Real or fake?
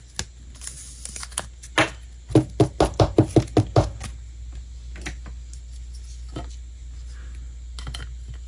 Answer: real